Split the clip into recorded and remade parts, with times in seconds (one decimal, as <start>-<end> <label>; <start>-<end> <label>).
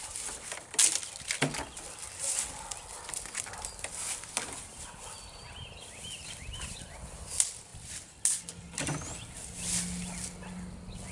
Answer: 0.0-11.1 recorded